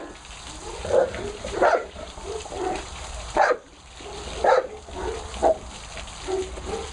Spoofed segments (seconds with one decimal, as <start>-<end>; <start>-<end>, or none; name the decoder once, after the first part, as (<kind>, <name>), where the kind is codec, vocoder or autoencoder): 0.8-3.8 (vocoder, BigVGAN v2)